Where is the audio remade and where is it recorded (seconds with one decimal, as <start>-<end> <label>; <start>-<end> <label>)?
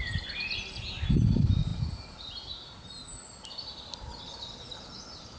0.0-5.4 recorded